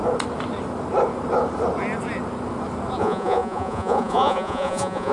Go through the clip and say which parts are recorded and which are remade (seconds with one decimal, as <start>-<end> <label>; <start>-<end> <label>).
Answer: 0.0-3.0 recorded; 3.0-5.1 remade